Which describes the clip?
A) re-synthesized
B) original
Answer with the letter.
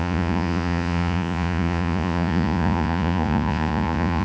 A